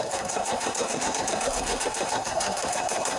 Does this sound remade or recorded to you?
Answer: remade